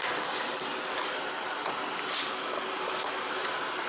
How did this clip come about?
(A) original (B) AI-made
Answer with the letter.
A